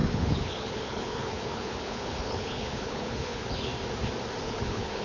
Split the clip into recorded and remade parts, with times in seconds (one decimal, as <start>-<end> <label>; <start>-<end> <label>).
0.0-3.7 remade; 3.7-4.4 recorded; 4.4-5.0 remade